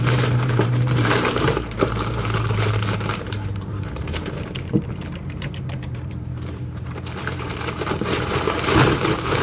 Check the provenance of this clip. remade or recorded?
remade